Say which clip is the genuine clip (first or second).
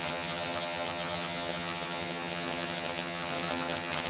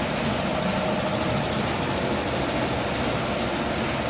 second